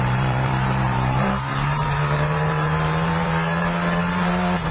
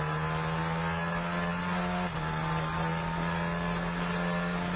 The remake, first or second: first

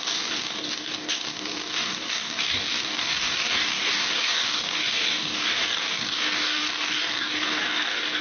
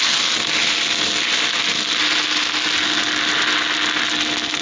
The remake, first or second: first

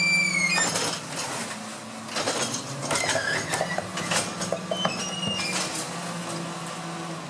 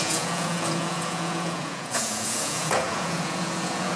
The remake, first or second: second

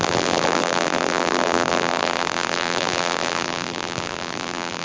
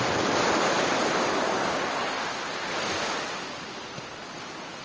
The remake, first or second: first